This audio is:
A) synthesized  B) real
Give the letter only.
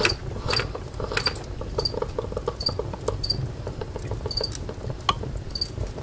B